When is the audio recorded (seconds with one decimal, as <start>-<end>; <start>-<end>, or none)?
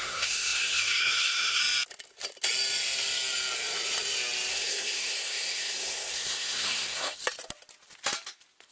1.6-4.5; 7.2-8.7